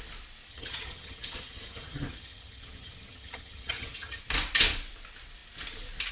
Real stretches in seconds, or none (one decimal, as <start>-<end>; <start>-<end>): 0.0-0.5; 4.2-6.1